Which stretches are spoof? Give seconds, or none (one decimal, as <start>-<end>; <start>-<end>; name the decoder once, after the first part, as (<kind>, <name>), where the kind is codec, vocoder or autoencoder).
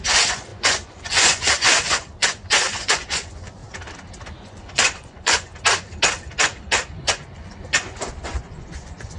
0.0-3.6 (vocoder, Vocos); 4.4-5.5; 6.9-9.2